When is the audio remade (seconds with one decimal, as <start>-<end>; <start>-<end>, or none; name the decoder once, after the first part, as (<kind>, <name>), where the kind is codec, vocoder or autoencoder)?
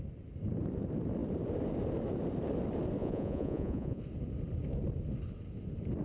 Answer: 3.0-4.0 (vocoder, Vocos)